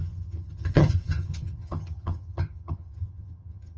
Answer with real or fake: fake